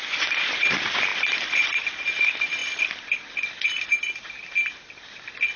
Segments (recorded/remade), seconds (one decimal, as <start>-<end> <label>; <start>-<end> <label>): 0.0-5.6 recorded